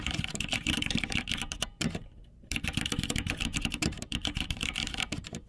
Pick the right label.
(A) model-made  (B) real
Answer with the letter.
A